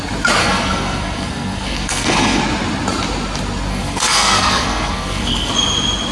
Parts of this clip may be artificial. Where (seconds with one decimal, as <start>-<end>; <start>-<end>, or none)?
0.4-2.4; 3.7-5.5